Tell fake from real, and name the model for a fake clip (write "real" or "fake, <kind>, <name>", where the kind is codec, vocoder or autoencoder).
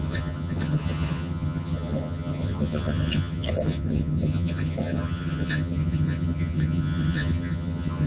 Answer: fake, vocoder, HiFi-GAN